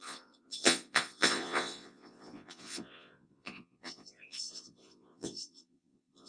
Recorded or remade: remade